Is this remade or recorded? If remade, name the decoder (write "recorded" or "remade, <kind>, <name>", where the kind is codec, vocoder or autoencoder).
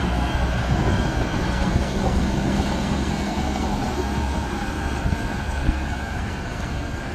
remade, codec, SNAC